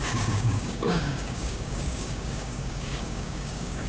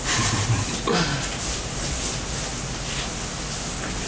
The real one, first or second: second